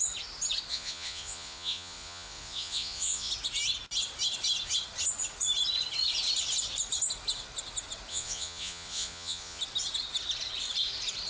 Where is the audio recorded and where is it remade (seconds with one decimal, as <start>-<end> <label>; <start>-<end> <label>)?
0.0-0.7 recorded; 0.7-3.3 remade; 3.3-8.1 recorded; 8.1-9.6 remade; 9.6-11.3 recorded